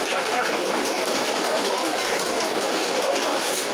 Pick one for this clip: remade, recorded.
remade